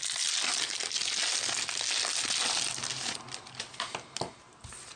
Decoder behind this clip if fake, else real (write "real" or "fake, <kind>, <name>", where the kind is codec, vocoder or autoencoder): real